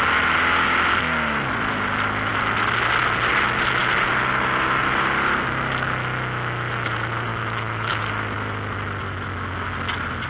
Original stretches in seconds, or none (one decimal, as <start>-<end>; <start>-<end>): 0.0-7.3; 8.1-10.3

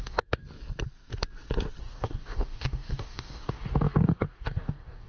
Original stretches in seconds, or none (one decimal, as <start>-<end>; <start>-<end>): 0.4-1.8

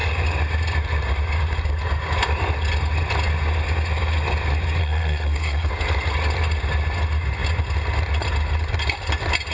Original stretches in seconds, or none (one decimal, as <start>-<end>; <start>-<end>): 0.0-4.8; 5.7-9.5

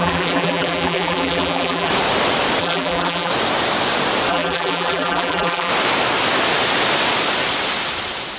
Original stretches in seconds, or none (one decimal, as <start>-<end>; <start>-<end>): 1.9-2.6; 3.3-4.3; 5.7-8.4

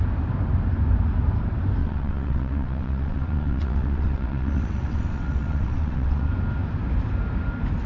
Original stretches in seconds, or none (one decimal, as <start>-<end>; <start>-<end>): 0.0-1.8; 6.3-7.9